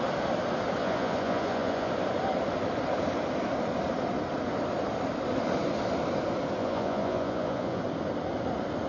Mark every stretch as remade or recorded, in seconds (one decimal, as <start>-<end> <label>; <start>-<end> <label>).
0.0-0.8 recorded; 0.8-1.9 remade; 1.9-6.6 recorded; 6.6-7.8 remade; 7.8-8.9 recorded